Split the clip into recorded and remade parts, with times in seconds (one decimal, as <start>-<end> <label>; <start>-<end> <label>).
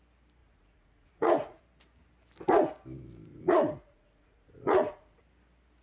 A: 0.0-0.4 recorded; 0.4-1.6 remade; 1.6-3.3 recorded; 3.3-5.2 remade; 5.2-5.8 recorded